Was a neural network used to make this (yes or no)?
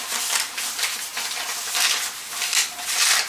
no